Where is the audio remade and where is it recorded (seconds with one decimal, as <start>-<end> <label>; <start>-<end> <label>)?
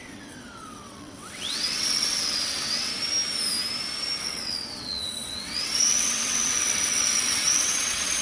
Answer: 0.0-2.9 remade; 2.9-4.2 recorded; 4.2-8.2 remade